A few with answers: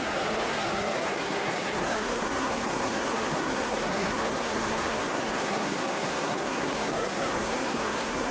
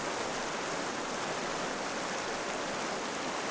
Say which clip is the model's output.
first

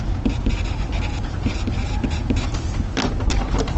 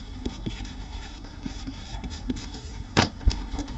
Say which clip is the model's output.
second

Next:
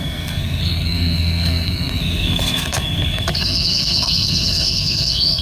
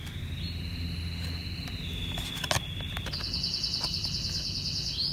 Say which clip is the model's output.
first